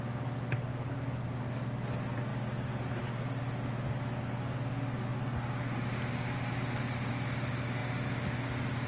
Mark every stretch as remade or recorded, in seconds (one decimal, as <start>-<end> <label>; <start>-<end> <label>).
0.0-8.9 recorded